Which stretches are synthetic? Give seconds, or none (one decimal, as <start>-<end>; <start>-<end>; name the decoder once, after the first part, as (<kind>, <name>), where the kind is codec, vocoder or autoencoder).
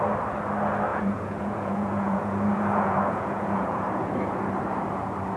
0.9-4.1 (vocoder, Vocos)